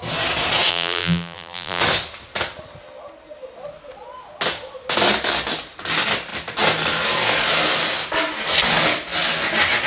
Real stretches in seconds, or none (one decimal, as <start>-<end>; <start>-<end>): 0.0-0.7; 1.8-9.9